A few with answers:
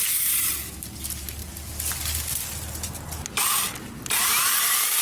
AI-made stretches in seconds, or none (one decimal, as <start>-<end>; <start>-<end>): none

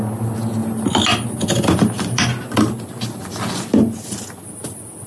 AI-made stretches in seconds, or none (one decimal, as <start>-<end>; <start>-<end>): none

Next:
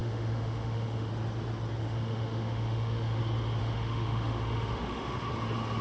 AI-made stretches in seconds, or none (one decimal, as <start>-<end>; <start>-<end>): 0.0-1.1; 1.8-3.2; 3.6-5.3

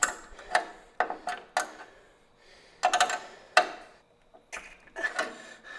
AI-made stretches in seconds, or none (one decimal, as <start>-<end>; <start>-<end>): 0.0-0.7

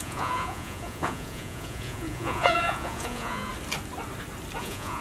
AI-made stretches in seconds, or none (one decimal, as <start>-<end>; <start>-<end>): 0.0-3.5; 4.6-5.0

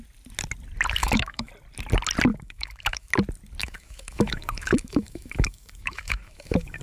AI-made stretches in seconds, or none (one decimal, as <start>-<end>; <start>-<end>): 1.0-1.5; 2.3-3.1; 3.6-6.8

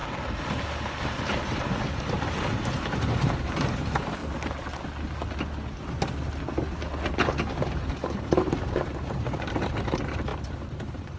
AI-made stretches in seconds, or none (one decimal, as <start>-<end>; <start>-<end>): 1.0-4.2; 7.7-11.2

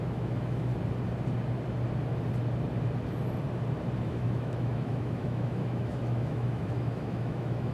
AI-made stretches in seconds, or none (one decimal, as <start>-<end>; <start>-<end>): 0.0-0.7; 4.0-7.7